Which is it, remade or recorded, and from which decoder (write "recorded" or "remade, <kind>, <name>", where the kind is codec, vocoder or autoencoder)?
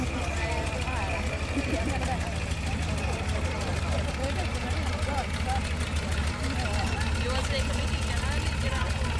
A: recorded